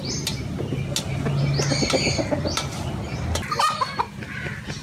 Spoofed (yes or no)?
no